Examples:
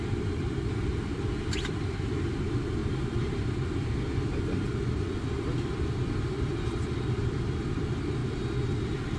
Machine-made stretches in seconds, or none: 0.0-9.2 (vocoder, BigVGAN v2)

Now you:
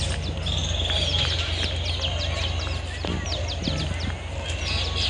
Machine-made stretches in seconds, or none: none

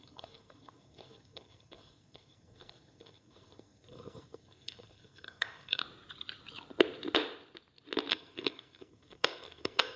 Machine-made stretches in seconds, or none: 0.0-5.8 (codec, SNAC); 8.1-10.0

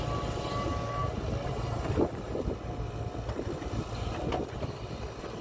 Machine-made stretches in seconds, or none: none